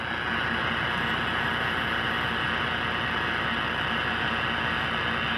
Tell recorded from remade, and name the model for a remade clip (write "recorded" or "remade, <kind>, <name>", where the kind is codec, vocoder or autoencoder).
recorded